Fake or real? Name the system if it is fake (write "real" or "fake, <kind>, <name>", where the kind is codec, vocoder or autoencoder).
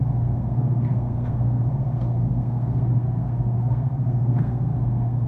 fake, codec, SNAC